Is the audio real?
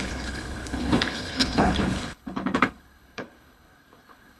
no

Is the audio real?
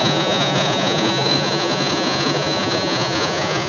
no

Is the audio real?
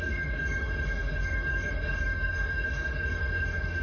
no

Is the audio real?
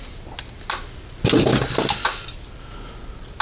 yes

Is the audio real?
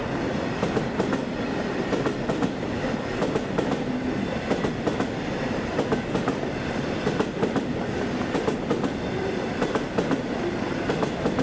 yes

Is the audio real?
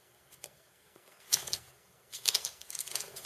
no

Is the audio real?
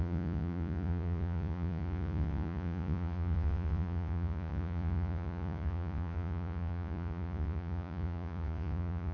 no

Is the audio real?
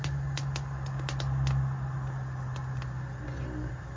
yes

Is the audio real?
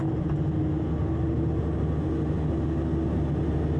yes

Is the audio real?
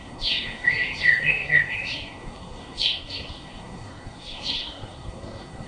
no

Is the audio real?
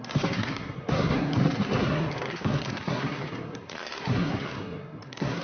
no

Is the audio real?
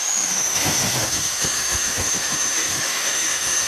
no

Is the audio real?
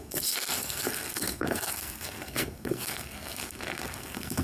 no